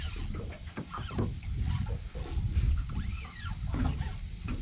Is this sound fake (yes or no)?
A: no